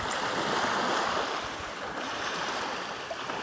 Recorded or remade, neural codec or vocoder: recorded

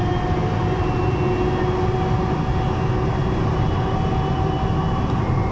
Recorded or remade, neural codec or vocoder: recorded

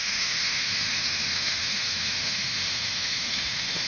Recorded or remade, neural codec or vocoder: remade, autoencoder, DAC-VAE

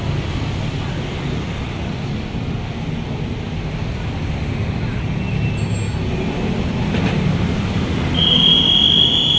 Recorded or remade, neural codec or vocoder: recorded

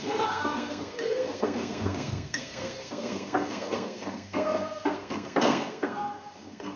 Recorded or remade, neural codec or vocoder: remade, codec, SNAC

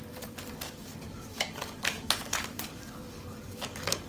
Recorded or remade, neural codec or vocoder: remade, codec, DAC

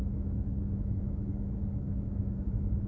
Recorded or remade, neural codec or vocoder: remade, autoencoder, DAC-VAE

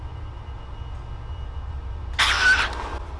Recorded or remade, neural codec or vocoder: recorded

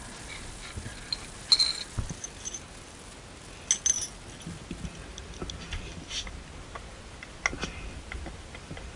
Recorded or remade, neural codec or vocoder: recorded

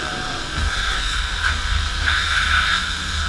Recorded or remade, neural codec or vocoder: remade, codec, SNAC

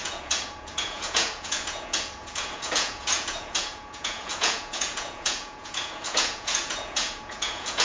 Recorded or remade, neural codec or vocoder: remade, vocoder, Vocos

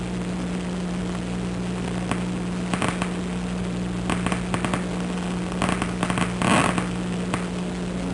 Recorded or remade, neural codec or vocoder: recorded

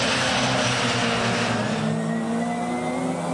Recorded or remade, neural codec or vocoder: recorded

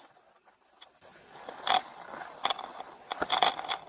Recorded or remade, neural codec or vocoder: recorded